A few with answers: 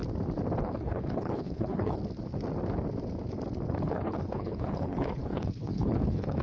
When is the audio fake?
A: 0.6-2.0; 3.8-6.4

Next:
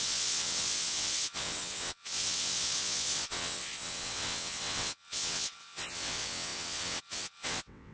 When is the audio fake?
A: 0.0-7.9

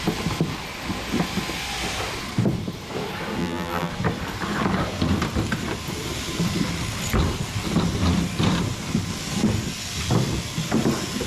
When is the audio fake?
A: 3.4-3.9

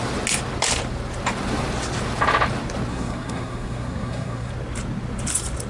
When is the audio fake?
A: 2.9-4.5